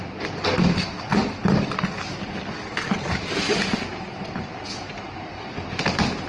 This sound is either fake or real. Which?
real